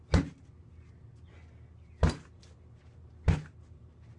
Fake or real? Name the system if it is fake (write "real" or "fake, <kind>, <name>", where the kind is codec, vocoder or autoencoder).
real